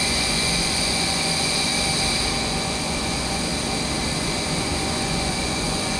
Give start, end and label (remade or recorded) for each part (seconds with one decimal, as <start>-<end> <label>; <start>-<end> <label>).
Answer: 0.0-1.7 remade; 1.7-2.4 recorded; 2.4-3.5 remade; 3.5-4.2 recorded; 4.2-6.0 remade